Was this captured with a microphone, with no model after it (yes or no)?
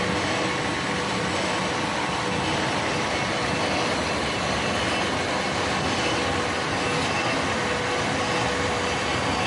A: yes